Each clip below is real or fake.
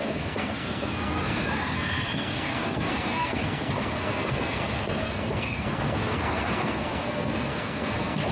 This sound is fake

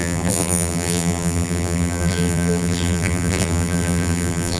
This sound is fake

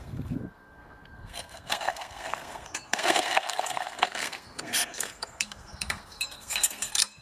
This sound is fake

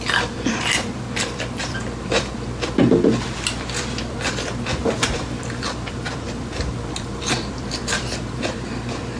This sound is fake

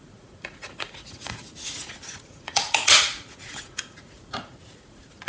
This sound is fake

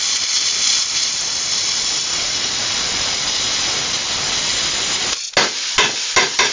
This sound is real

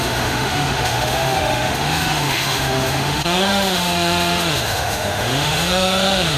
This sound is fake